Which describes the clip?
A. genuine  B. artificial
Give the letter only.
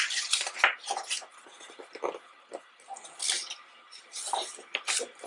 A